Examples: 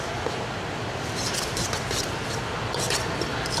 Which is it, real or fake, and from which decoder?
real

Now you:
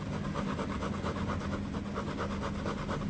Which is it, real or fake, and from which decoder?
real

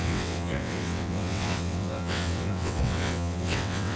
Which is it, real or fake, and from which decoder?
fake, vocoder, WaveNeXt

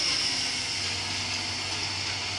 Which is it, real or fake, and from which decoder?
real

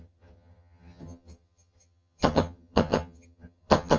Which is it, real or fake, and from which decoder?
fake, vocoder, HiFi-GAN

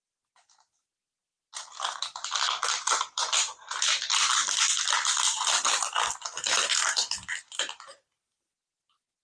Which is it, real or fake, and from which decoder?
fake, vocoder, BigVGAN v2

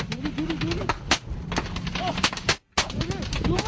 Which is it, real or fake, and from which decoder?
real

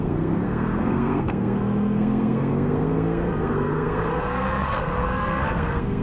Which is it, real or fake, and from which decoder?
fake, codec, SNAC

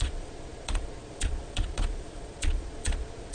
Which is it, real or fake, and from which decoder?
fake, vocoder, Vocos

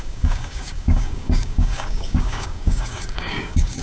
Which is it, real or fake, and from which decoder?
fake, codec, DAC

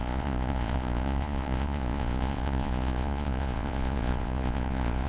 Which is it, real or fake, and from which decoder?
fake, vocoder, Vocos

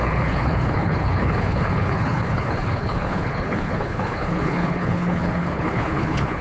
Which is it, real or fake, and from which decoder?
fake, codec, HILCodec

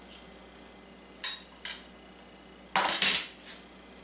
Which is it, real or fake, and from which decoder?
real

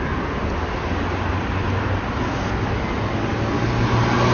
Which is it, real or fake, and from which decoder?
real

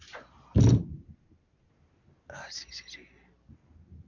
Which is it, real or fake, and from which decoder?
real